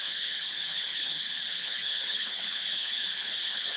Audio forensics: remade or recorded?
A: remade